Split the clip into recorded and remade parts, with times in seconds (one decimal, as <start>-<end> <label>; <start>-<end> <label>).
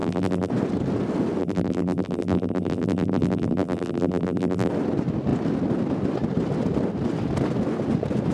0.0-0.5 remade; 0.5-1.4 recorded; 1.4-4.7 remade; 4.7-8.3 recorded